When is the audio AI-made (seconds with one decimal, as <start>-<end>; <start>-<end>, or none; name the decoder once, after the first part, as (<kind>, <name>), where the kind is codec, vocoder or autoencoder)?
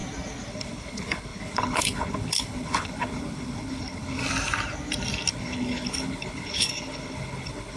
0.5-4.2 (codec, HILCodec); 5.3-7.8